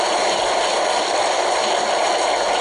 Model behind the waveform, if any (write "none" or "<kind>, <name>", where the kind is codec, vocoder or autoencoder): none